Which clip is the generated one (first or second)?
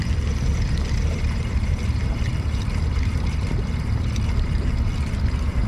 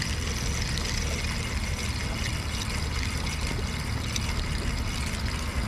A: first